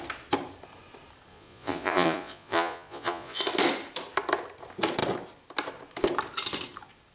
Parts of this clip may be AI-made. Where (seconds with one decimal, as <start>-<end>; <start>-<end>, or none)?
1.3-3.4